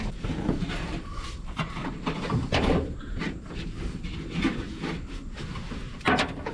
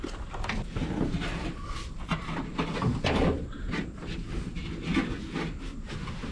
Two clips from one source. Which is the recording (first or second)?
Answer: second